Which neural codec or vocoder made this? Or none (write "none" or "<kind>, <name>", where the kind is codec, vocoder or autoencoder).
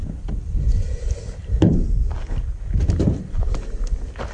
none